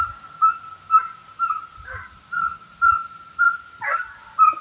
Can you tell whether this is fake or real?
real